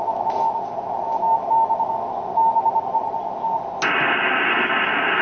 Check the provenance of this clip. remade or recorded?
recorded